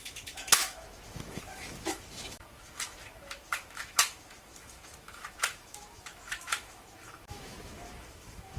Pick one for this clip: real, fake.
fake